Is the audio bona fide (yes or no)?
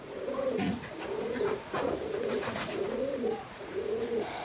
no